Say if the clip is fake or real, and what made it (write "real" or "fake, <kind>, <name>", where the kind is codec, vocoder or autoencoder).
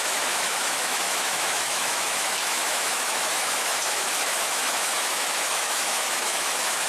fake, autoencoder, DAC-VAE